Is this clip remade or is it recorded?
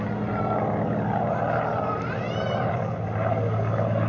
recorded